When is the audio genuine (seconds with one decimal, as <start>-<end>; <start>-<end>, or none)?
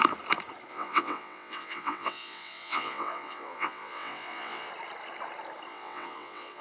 0.0-0.7; 4.7-5.7